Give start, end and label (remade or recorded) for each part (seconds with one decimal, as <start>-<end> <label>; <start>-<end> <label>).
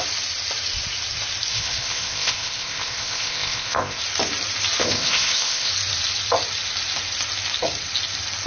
0.0-1.5 recorded; 1.5-4.0 remade; 4.0-4.8 recorded; 4.8-5.7 remade; 5.7-8.5 recorded